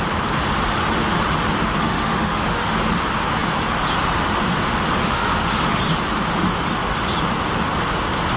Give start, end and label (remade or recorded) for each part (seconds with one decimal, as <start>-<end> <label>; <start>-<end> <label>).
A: 0.0-1.8 recorded; 1.8-2.7 remade; 2.7-5.0 recorded; 5.0-5.8 remade; 5.8-8.4 recorded